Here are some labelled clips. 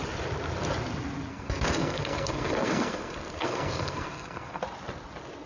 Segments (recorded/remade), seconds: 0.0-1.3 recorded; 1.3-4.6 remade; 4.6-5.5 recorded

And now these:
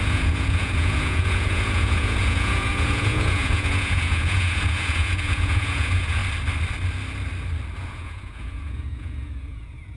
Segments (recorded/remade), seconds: 0.0-6.2 remade; 6.2-7.8 recorded; 7.8-10.0 remade

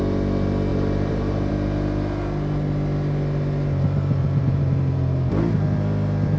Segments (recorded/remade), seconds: 0.0-0.7 recorded; 0.7-1.5 remade; 1.5-4.2 recorded; 4.2-5.3 remade; 5.3-6.4 recorded

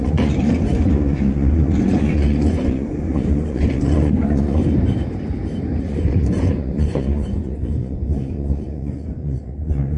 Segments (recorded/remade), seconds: 0.0-4.6 remade; 4.6-5.8 recorded; 5.8-10.0 remade

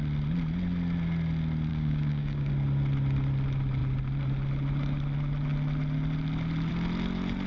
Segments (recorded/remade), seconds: 0.0-1.7 recorded; 1.7-2.5 remade; 2.5-7.5 recorded